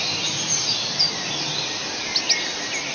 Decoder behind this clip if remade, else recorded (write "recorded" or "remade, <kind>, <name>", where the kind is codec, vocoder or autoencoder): recorded